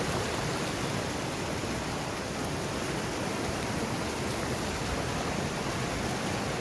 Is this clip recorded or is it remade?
recorded